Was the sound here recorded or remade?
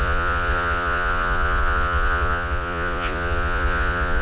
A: remade